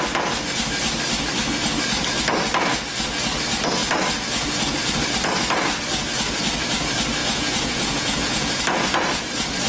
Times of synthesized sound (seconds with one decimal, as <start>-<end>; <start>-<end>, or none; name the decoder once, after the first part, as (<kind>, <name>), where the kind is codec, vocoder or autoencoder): 7.2-8.6 (vocoder, Vocos)